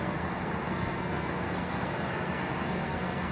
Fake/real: fake